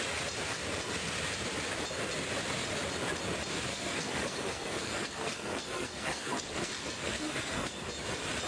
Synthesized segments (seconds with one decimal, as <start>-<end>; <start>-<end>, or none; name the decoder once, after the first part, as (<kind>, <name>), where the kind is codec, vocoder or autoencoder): 3.7-7.9 (codec, SNAC)